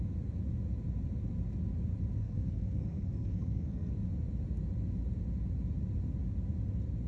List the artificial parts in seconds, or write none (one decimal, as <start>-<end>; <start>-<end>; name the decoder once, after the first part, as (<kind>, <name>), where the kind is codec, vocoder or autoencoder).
2.2-3.9 (codec, SNAC)